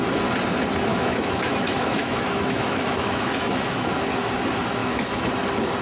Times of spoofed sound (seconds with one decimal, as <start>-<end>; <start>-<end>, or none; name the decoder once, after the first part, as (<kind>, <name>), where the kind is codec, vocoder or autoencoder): 0.9-3.9 (autoencoder, DAC-VAE); 4.8-5.3